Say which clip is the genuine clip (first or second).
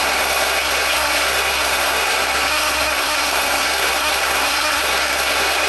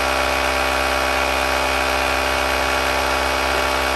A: second